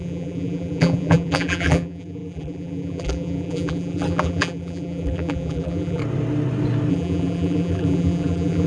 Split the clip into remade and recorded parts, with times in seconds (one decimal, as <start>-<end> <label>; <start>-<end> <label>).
0.0-6.0 remade; 6.0-6.9 recorded; 6.9-8.7 remade